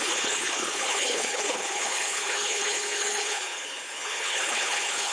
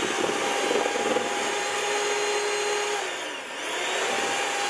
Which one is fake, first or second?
first